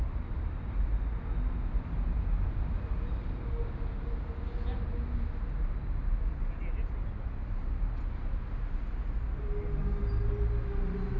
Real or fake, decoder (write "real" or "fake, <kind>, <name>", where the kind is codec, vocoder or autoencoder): real